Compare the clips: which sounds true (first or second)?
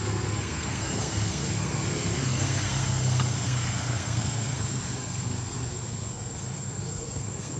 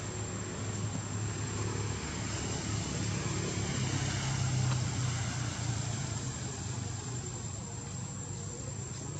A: second